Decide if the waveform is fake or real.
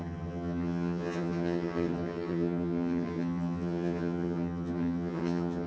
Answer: fake